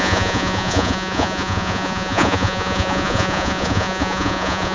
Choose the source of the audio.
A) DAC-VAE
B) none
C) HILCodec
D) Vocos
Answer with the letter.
D